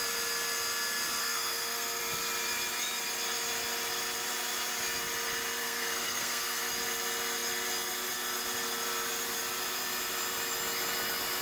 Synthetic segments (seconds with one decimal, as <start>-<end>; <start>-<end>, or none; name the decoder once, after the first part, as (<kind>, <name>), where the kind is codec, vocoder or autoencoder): 1.2-2.0 (codec, SNAC); 5.6-6.7